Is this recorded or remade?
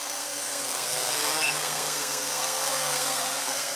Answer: remade